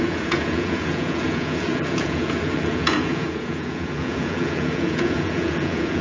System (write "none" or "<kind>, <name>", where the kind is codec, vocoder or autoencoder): vocoder, Vocos